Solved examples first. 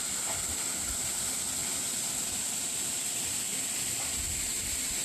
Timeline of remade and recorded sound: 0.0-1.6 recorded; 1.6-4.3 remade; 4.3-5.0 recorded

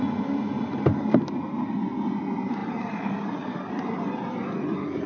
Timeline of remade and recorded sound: 0.0-0.9 recorded; 0.9-1.7 remade; 1.7-2.6 recorded; 2.6-3.7 remade; 3.7-5.1 recorded